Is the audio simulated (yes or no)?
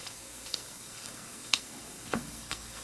yes